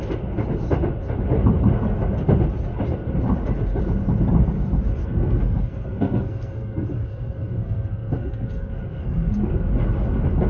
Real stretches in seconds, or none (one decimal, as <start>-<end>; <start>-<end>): 0.0-5.0; 9.5-10.5